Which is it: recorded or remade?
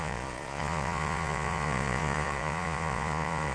remade